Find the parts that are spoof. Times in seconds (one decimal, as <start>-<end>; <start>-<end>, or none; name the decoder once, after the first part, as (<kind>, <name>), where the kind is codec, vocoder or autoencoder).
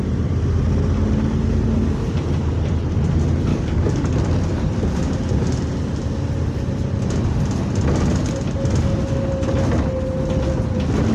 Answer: 3.5-4.1 (codec, DAC)